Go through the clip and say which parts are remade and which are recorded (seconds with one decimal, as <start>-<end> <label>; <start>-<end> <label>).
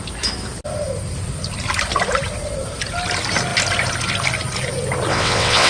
0.0-5.1 recorded; 5.1-5.7 remade